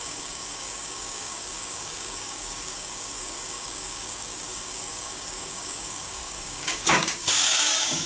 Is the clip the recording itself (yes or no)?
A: no